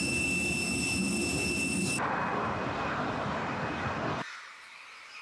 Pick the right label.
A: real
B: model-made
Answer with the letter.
A